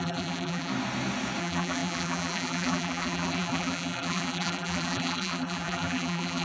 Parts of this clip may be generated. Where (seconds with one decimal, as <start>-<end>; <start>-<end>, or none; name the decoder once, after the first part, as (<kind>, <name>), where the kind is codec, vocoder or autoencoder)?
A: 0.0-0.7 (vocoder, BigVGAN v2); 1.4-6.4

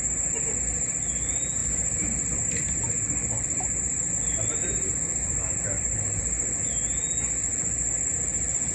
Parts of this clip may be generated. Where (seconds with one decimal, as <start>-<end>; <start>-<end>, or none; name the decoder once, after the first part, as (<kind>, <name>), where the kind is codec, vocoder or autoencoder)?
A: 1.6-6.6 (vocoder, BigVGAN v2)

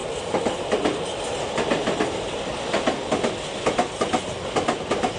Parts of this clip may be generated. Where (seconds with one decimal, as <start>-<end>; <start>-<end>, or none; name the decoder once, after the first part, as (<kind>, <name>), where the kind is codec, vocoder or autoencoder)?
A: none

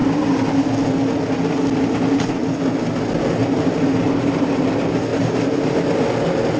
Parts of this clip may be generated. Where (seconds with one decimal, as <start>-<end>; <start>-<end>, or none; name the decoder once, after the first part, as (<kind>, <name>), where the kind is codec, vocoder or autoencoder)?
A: 3.4-4.5 (vocoder, BigVGAN v2); 5.1-5.8